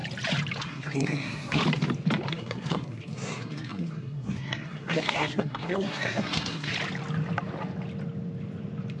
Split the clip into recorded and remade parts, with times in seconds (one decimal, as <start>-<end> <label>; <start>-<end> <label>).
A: 0.0-0.6 recorded; 0.6-1.6 remade; 1.6-2.3 recorded; 2.3-6.7 remade; 6.7-9.0 recorded